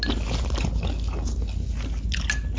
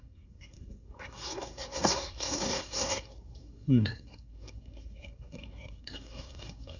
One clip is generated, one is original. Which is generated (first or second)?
second